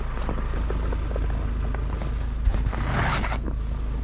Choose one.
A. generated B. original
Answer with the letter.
B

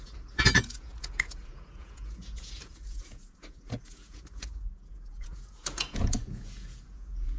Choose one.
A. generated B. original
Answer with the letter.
A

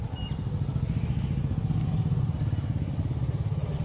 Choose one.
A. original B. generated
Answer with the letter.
A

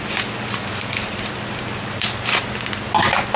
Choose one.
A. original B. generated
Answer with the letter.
A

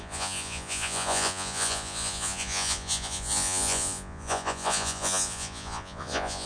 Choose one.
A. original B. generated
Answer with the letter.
B